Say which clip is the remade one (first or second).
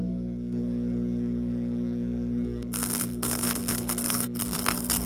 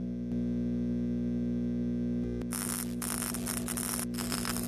first